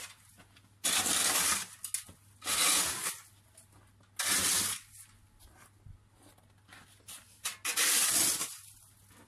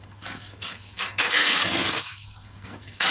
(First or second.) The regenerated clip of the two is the second